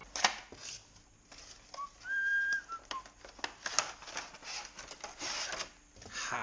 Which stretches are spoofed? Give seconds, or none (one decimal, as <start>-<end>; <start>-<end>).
none